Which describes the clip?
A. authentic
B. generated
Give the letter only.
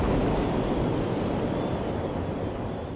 A